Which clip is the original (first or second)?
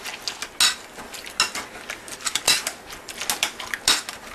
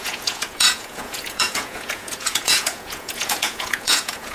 first